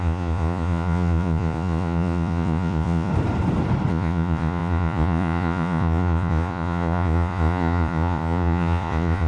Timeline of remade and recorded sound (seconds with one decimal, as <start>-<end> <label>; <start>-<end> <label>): 0.0-3.1 remade; 3.1-3.9 recorded; 3.9-9.3 remade